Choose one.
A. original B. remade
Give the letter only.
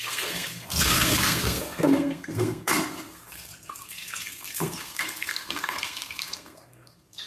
B